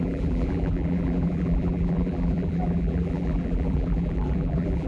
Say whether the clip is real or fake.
fake